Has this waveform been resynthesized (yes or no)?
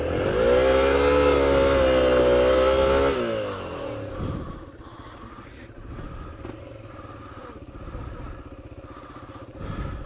no